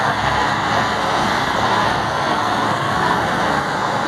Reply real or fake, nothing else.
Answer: fake